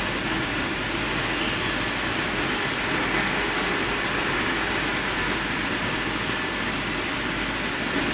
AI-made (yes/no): no